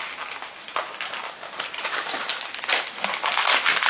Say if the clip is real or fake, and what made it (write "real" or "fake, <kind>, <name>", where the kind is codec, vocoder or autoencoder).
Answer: real